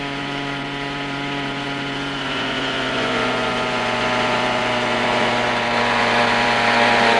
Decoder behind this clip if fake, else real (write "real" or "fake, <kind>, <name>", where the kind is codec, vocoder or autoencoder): fake, vocoder, Vocos